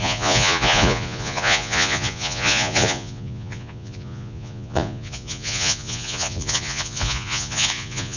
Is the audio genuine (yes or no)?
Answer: no